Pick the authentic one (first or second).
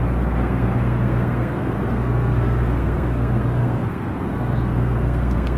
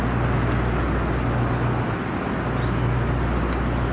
second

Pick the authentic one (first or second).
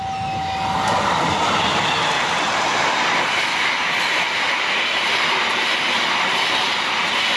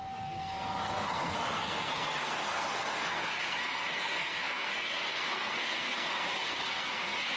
first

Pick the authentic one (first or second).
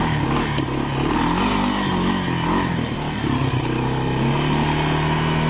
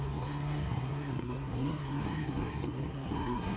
first